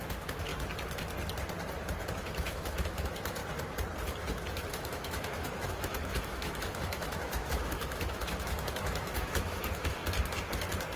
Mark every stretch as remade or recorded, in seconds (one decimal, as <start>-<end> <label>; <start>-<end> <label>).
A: 0.0-0.5 remade; 0.5-2.1 recorded; 2.1-3.4 remade; 3.4-4.7 recorded; 4.7-10.0 remade; 10.0-11.0 recorded